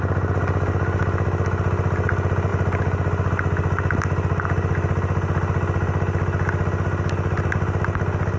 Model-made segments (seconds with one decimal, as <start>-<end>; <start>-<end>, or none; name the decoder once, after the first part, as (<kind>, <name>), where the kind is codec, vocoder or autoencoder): none